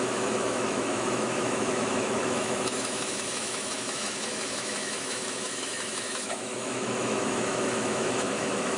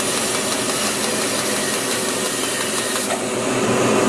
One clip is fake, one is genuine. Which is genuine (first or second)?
second